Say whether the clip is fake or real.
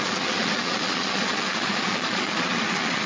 fake